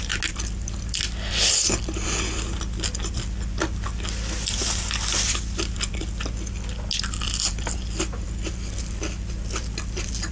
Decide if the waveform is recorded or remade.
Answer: recorded